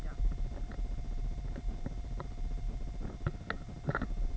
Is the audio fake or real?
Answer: real